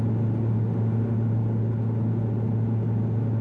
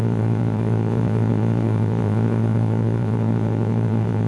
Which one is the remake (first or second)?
second